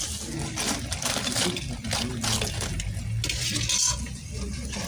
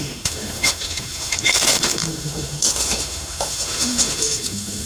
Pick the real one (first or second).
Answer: first